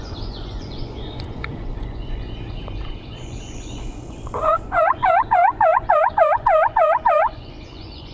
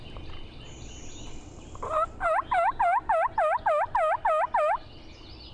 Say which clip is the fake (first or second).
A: first